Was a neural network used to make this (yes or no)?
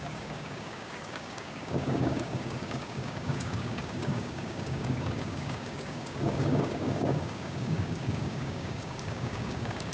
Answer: yes